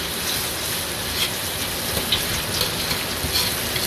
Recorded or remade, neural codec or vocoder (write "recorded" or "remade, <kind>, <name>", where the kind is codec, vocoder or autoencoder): recorded